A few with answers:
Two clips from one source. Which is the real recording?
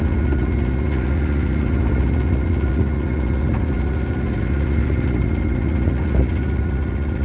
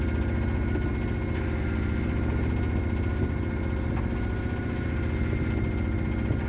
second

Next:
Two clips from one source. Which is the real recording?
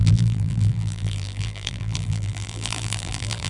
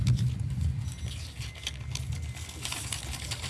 second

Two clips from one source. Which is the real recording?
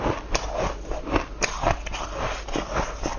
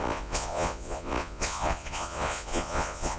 first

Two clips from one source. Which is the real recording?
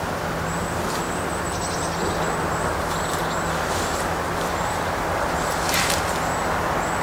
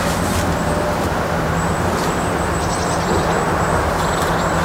first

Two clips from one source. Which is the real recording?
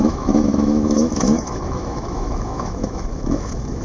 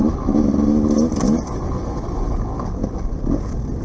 second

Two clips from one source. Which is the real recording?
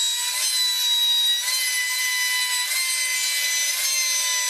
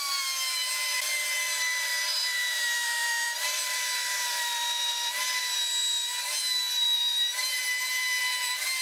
first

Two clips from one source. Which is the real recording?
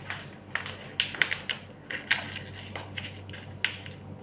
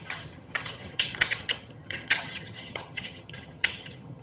first